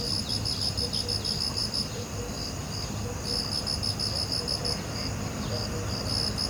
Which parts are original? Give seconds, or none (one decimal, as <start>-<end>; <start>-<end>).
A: 0.0-1.6; 2.3-4.6; 5.5-6.5